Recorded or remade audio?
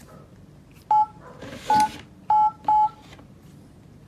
recorded